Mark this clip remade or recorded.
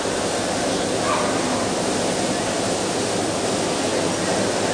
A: recorded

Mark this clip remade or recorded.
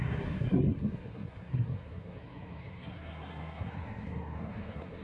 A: remade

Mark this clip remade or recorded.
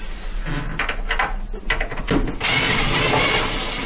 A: recorded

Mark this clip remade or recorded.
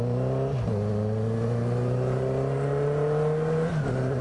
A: recorded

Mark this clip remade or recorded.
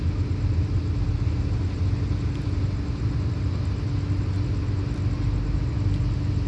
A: recorded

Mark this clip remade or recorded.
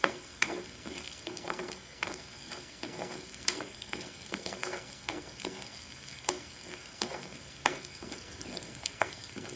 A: remade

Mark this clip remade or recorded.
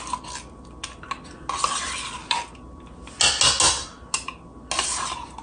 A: recorded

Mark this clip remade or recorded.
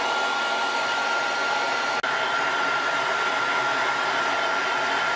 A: recorded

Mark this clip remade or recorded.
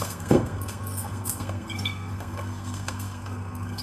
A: remade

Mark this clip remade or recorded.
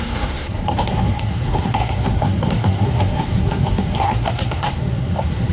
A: remade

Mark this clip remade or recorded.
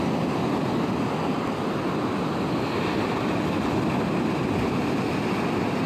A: recorded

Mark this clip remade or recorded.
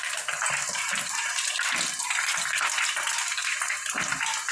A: recorded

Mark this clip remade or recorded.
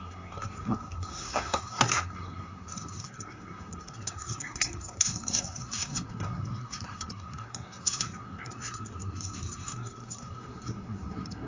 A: remade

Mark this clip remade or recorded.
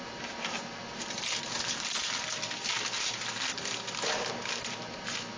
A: recorded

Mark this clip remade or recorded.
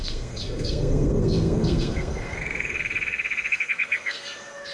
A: remade